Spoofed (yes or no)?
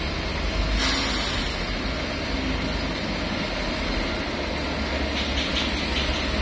no